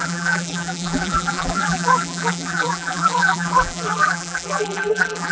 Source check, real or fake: fake